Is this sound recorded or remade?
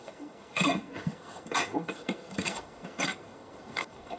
remade